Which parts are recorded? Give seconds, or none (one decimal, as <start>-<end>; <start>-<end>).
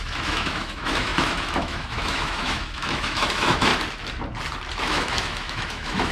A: 3.7-4.8